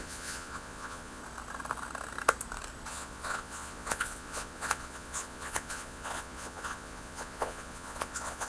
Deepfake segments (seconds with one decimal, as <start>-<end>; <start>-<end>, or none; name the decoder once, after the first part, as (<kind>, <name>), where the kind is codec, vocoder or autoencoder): 0.0-1.2 (vocoder, Vocos); 2.9-8.5